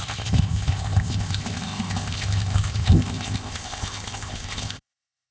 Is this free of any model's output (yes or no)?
no